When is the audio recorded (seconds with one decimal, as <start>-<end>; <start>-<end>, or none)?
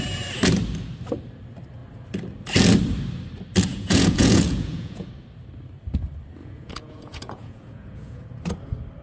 0.0-3.7; 5.1-6.4; 8.4-9.0